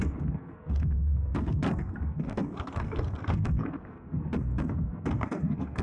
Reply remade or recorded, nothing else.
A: remade